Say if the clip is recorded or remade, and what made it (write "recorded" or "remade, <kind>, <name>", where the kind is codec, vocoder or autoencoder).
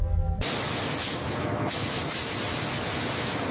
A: recorded